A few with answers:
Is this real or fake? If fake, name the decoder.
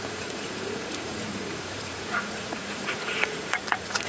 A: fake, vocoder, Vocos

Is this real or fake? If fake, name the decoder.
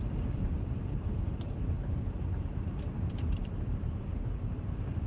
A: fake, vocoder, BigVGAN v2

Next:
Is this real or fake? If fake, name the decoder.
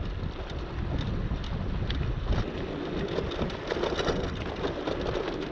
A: real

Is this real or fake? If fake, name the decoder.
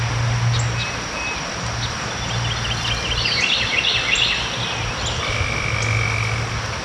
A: real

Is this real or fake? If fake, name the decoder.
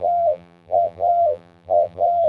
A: fake, vocoder, BigVGAN v2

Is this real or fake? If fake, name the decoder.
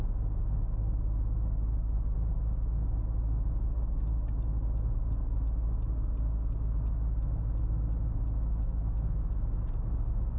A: real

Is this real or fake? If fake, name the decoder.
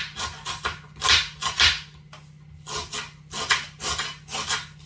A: real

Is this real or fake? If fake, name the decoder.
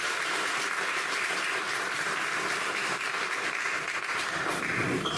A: fake, vocoder, BigVGAN v2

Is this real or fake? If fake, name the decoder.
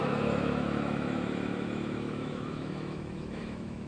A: fake, autoencoder, DAC-VAE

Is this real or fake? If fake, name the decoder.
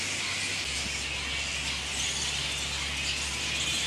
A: real